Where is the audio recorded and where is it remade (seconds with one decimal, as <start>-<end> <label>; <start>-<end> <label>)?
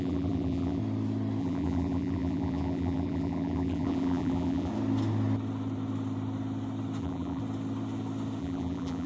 0.0-0.8 remade; 0.8-1.4 recorded; 1.4-4.7 remade; 4.7-7.0 recorded; 7.0-7.4 remade; 7.4-8.4 recorded; 8.4-9.1 remade